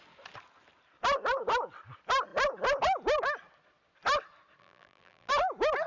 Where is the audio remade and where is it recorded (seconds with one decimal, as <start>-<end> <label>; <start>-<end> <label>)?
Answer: 0.0-4.6 recorded; 4.6-5.3 remade; 5.3-5.9 recorded